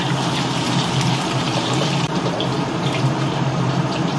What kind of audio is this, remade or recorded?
remade